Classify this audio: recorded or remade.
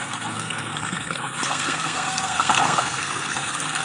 remade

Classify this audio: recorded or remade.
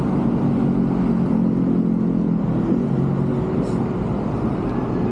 recorded